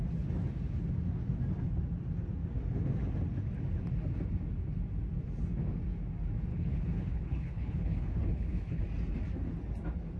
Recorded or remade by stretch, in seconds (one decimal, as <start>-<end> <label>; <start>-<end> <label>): 0.0-6.5 recorded; 6.5-8.8 remade; 8.8-10.2 recorded